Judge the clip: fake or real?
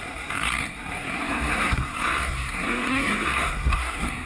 fake